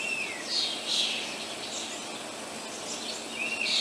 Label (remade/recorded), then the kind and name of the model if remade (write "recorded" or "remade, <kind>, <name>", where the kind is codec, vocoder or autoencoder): recorded